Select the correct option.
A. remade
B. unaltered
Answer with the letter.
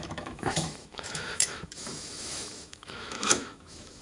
A